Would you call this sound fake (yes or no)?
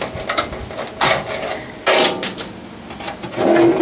no